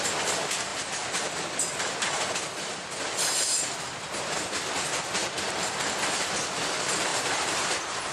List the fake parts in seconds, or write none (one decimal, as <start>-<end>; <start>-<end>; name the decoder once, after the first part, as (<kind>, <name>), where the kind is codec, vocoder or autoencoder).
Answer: 7.1-8.1 (vocoder, BigVGAN v2)